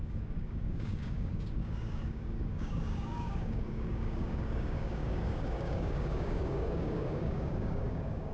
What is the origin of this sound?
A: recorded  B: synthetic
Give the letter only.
B